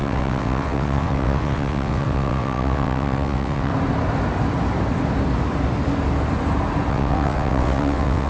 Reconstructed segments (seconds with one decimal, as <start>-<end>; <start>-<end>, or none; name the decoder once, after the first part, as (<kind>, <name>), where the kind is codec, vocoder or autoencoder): 0.0-3.7 (vocoder, WaveNeXt); 6.9-8.3